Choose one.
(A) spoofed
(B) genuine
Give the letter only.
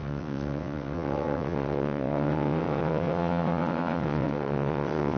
A